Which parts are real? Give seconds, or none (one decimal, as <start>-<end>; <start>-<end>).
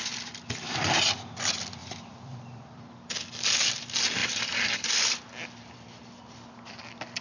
0.0-1.8; 2.8-4.2; 5.0-7.2